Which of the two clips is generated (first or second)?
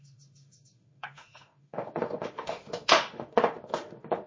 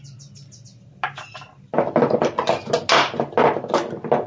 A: first